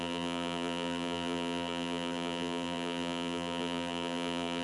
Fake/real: fake